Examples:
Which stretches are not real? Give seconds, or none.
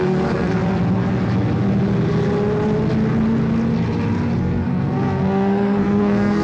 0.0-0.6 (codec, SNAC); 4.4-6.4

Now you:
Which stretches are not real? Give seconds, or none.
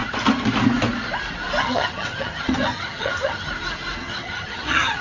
1.6-3.5 (vocoder, HiFi-GAN); 4.0-5.0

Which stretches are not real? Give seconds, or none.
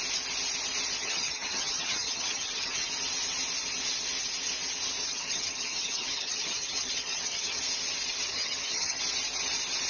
1.0-2.9 (vocoder, HiFi-GAN); 5.1-7.6; 8.3-9.0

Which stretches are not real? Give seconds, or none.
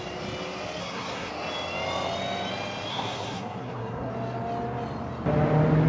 0.8-1.3 (codec, SNAC); 2.9-4.1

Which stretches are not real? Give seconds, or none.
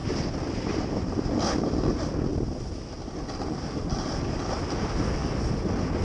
none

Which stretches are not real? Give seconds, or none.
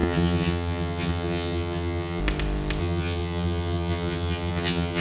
0.0-2.2 (vocoder, HiFi-GAN); 2.8-5.0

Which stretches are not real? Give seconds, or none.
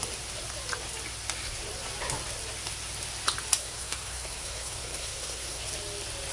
3.6-5.7 (codec, SNAC)